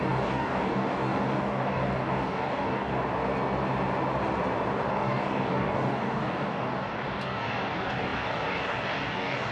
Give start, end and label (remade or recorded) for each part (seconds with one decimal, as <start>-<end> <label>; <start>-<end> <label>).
0.0-2.9 remade; 2.9-4.9 recorded; 4.9-9.5 remade